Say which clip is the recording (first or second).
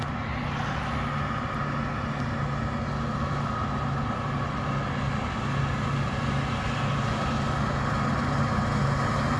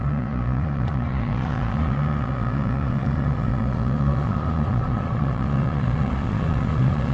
first